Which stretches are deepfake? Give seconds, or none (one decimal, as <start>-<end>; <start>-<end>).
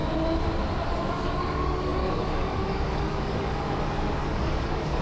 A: 0.7-5.0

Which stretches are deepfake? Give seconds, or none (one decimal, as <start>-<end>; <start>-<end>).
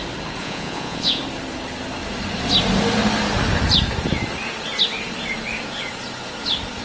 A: 0.4-1.2